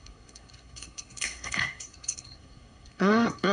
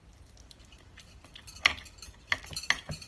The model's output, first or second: first